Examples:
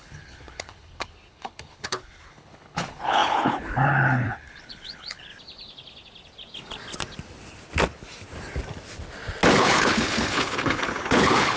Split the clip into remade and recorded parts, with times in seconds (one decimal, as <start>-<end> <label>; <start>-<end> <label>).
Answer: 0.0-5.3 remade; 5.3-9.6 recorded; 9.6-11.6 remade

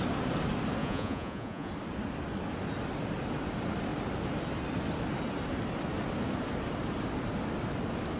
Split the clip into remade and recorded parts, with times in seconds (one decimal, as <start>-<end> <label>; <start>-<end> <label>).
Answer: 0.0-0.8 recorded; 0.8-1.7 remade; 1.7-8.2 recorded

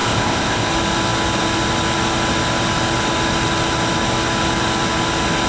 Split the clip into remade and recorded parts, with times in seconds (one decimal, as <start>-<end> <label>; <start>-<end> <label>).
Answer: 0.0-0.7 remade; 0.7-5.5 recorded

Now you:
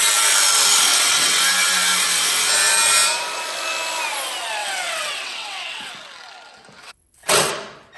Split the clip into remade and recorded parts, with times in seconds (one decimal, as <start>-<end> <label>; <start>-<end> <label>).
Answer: 0.0-0.9 recorded; 0.9-1.4 remade; 1.4-4.6 recorded; 4.6-5.9 remade; 5.9-6.8 recorded; 6.8-7.5 remade; 7.5-8.0 recorded

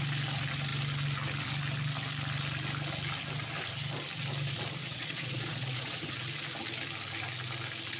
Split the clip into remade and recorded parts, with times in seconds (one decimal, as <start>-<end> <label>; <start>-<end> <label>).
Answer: 0.0-4.8 recorded; 4.8-6.1 remade; 6.1-8.0 recorded

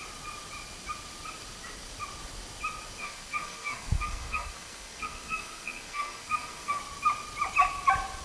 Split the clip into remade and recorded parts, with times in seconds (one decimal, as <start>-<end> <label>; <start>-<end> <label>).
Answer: 0.0-3.0 recorded; 3.0-6.8 remade; 6.8-8.2 recorded